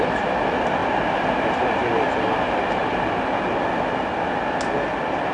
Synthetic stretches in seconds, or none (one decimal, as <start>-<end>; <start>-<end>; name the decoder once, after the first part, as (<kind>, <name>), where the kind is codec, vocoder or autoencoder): none